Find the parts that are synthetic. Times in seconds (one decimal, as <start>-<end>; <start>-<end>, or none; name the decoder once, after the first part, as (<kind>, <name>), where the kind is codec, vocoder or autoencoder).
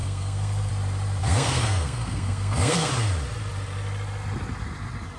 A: 0.0-0.7 (codec, SNAC); 1.2-2.9